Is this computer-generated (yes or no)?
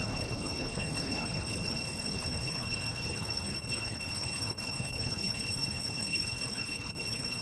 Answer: yes